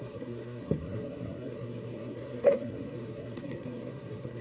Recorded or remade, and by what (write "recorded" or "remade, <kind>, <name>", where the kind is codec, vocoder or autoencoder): remade, codec, SNAC